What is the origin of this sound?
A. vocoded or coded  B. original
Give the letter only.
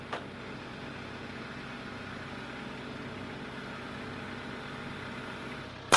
B